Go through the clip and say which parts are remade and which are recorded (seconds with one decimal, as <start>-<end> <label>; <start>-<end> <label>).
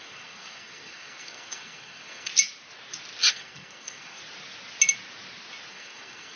0.0-2.3 remade; 2.3-3.3 recorded; 3.3-4.2 remade; 4.2-5.7 recorded; 5.7-6.4 remade